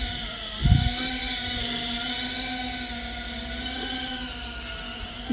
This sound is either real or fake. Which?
real